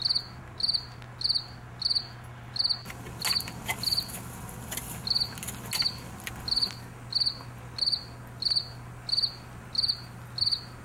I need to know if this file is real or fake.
real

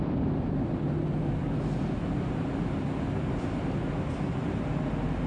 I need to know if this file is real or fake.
real